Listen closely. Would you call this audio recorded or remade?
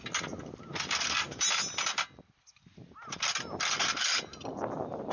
recorded